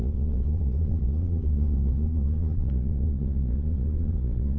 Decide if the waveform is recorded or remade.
remade